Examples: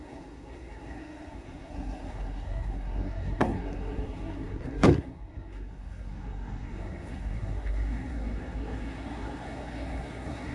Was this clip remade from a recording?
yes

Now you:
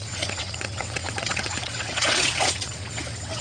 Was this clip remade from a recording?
yes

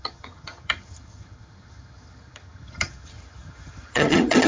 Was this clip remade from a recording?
yes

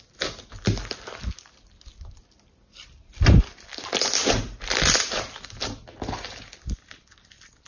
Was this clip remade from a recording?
no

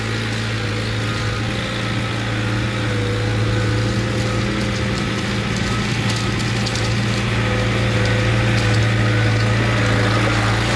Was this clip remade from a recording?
no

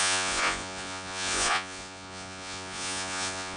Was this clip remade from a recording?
yes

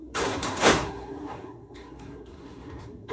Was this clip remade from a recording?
yes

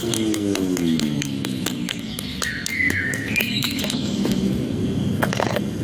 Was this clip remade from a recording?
yes